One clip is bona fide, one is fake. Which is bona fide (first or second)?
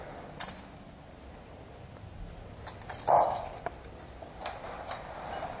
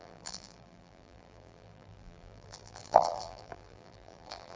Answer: first